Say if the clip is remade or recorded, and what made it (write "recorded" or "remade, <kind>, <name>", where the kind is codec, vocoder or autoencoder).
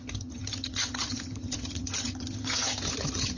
remade, vocoder, HiFi-GAN